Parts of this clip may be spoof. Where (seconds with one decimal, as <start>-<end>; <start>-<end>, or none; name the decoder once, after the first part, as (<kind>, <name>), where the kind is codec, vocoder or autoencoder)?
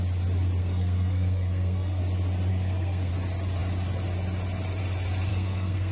0.6-2.0 (codec, SNAC); 2.5-3.1; 5.3-5.9